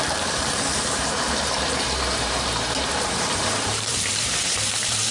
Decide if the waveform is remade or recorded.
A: remade